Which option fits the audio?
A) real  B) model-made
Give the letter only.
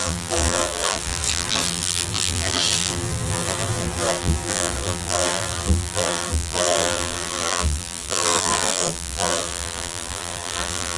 B